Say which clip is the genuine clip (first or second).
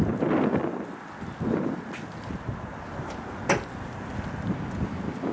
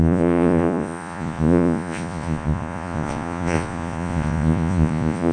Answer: first